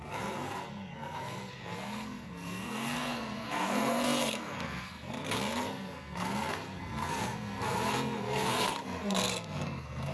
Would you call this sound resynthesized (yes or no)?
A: yes